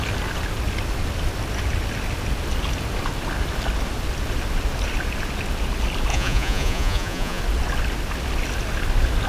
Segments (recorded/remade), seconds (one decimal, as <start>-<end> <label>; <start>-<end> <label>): 0.0-6.1 recorded; 6.1-7.4 remade; 7.4-9.3 recorded